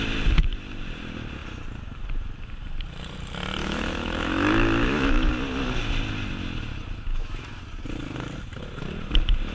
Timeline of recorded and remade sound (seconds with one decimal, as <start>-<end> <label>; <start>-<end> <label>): 0.0-3.6 recorded; 3.6-5.3 remade; 5.3-7.1 recorded; 7.1-7.6 remade; 7.6-9.5 recorded